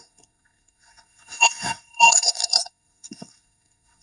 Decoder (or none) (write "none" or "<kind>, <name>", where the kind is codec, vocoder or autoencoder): codec, SNAC